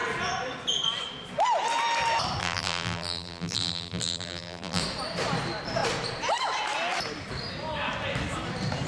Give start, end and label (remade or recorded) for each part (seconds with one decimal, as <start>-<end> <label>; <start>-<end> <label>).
0.0-2.4 recorded; 2.4-4.8 remade; 4.8-8.9 recorded